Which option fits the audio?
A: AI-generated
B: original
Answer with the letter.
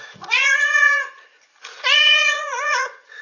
A